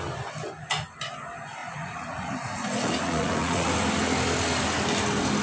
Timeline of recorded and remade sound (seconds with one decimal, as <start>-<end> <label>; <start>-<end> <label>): 0.0-1.6 recorded; 1.6-3.7 remade; 3.7-5.4 recorded